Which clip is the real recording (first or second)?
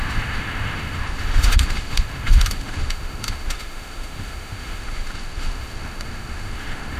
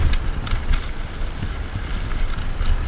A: second